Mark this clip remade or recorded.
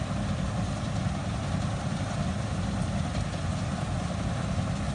recorded